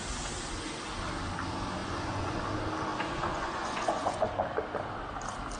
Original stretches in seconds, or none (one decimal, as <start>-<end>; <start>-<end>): 0.0-1.8; 2.4-2.9; 4.2-5.6